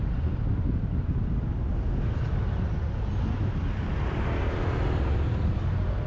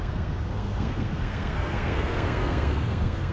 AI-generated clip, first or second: second